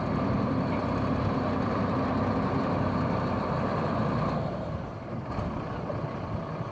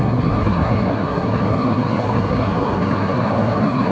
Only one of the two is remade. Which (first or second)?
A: second